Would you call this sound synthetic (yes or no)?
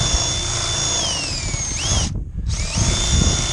no